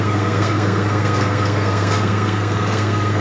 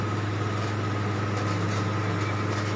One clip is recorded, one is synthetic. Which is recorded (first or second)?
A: second